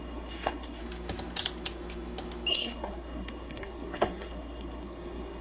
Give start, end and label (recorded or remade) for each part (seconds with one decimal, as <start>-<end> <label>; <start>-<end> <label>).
0.0-0.8 remade; 0.8-2.5 recorded; 2.5-5.4 remade